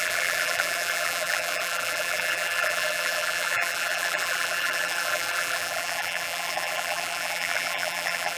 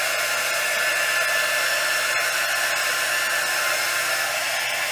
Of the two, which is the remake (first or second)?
first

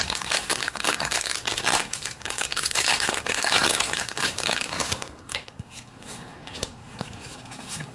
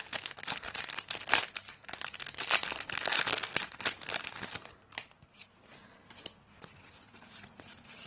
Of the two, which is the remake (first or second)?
first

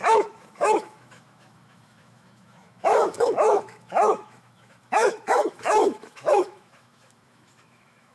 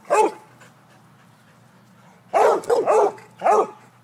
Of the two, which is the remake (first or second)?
first